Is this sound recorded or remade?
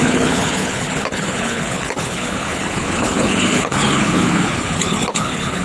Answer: remade